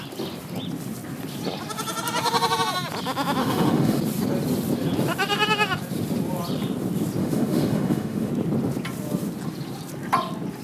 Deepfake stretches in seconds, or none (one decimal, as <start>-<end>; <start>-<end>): 3.4-4.0; 7.2-8.3